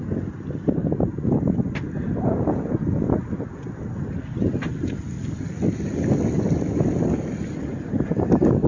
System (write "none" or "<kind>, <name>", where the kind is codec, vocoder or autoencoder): none